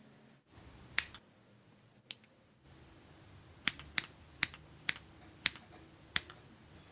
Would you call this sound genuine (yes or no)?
yes